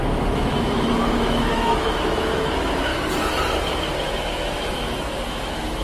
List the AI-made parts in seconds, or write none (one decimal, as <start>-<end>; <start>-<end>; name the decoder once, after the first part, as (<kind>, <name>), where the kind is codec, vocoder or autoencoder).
0.0-2.9 (autoencoder, DAC-VAE); 4.3-5.8